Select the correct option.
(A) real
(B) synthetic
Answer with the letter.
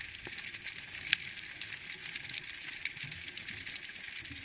A